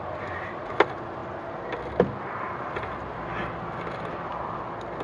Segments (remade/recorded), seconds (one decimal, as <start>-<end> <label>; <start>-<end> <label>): 0.0-5.0 recorded

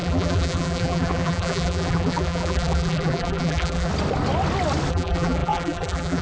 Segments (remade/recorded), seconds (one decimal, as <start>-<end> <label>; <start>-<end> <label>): 0.0-3.9 remade; 3.9-4.9 recorded; 4.9-6.2 remade

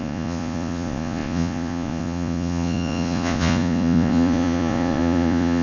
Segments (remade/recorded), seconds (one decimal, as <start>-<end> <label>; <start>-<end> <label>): 0.0-5.6 remade